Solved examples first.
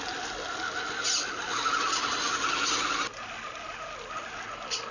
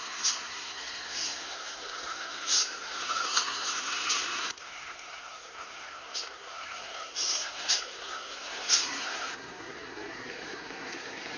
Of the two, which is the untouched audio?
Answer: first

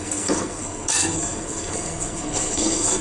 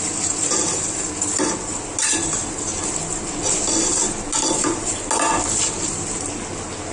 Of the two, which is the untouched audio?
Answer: second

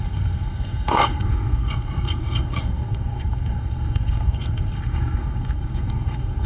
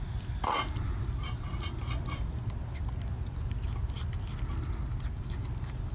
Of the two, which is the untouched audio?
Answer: second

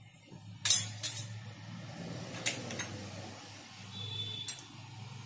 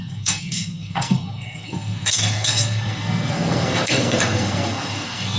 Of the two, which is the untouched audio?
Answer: first